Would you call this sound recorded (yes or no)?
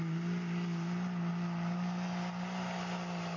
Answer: yes